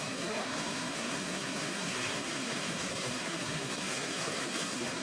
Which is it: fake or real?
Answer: fake